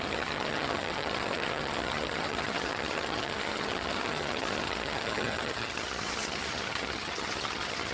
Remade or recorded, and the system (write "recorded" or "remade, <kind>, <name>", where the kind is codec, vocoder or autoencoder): remade, vocoder, HiFi-GAN